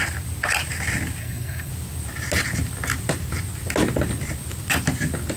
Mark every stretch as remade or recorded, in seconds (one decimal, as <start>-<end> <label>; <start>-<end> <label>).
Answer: 0.0-1.2 recorded; 1.2-1.7 remade; 1.7-5.4 recorded